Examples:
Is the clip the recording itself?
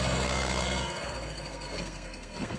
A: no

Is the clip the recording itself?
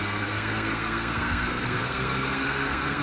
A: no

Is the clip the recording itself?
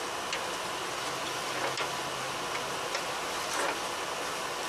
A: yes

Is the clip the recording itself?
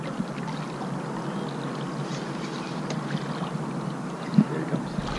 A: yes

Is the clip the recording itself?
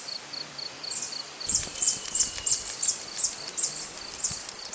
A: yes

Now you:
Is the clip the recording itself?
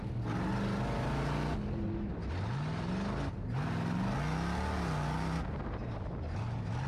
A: yes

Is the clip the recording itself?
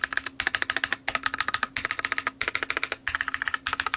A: yes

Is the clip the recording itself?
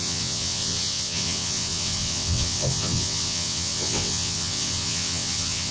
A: no